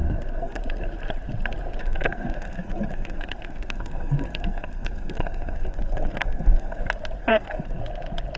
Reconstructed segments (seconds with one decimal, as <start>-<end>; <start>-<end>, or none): 0.0-0.6; 1.8-6.8; 7.2-7.8